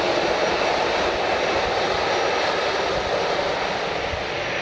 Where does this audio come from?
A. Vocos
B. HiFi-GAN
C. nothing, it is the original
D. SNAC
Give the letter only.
C